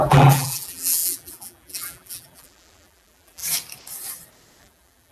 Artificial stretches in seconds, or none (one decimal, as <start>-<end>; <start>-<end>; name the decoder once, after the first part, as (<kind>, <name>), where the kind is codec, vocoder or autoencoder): 0.0-3.4 (vocoder, BigVGAN v2); 4.6-5.1